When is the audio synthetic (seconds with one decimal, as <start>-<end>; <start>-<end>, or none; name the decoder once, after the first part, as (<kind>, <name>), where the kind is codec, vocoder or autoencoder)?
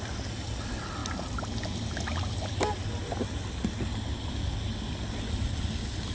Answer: none